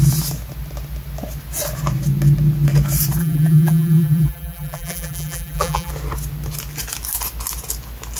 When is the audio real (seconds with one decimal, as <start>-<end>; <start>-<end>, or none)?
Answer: 0.0-3.2; 5.9-8.2